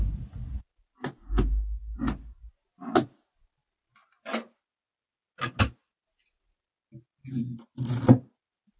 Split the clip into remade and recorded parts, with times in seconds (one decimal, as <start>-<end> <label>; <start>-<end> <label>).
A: 0.0-8.8 recorded